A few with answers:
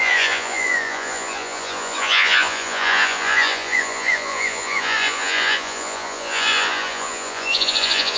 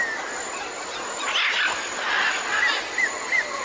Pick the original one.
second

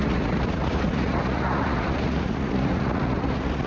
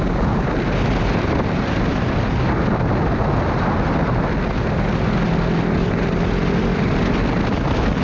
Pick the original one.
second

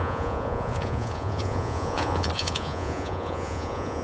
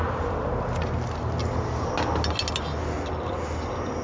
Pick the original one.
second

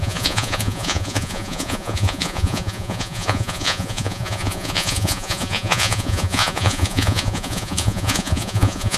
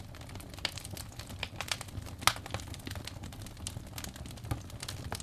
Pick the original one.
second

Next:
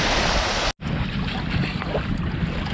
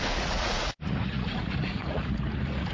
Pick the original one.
first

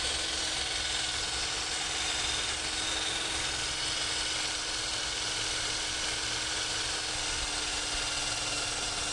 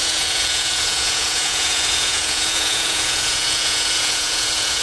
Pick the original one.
first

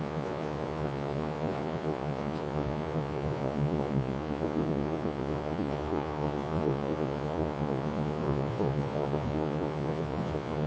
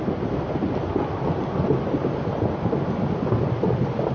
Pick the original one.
second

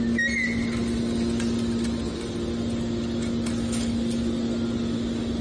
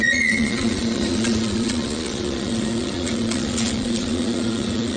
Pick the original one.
first